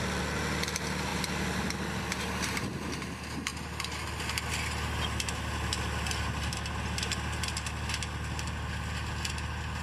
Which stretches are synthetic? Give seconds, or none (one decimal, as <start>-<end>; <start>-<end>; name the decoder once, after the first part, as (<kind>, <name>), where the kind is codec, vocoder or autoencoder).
none